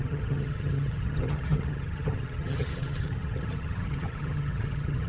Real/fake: fake